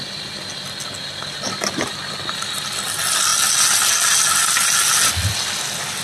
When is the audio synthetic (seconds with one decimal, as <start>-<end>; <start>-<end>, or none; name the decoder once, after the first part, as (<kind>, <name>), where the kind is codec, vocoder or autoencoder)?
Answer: none